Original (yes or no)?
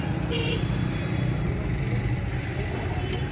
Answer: yes